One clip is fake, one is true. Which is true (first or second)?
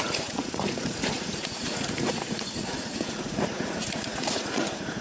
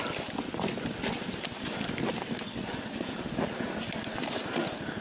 second